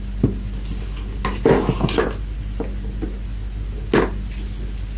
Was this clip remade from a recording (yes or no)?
no